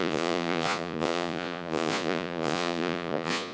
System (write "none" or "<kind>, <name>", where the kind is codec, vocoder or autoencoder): vocoder, Vocos